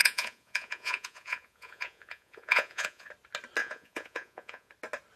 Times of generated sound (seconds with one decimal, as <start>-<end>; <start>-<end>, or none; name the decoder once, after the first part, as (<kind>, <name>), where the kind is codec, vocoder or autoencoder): 0.0-3.1 (vocoder, Vocos); 3.6-4.7

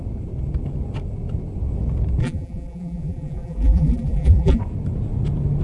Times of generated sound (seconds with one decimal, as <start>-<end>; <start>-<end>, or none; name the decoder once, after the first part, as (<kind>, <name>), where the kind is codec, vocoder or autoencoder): 2.2-4.6 (vocoder, BigVGAN v2)

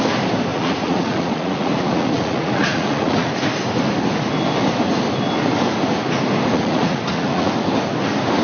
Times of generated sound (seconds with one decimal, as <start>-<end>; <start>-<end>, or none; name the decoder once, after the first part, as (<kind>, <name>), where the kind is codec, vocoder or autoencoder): 0.5-3.3 (vocoder, Vocos); 6.5-7.5

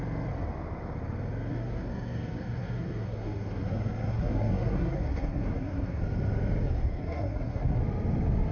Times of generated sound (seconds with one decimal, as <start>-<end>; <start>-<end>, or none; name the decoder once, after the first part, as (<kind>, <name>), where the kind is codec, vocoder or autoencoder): 1.5-6.0 (codec, SNAC); 7.0-7.8